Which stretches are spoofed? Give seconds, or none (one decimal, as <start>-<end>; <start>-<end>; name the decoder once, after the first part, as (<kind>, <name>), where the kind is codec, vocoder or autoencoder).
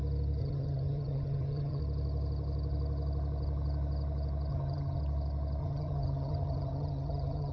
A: 0.4-1.8 (vocoder, HiFi-GAN); 4.5-5.0; 5.6-7.5